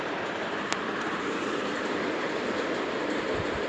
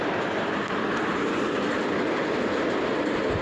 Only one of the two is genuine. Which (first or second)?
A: second